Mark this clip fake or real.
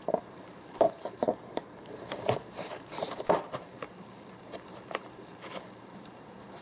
fake